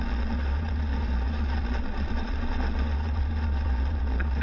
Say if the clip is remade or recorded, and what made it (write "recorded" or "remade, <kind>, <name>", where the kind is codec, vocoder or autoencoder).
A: remade, vocoder, Vocos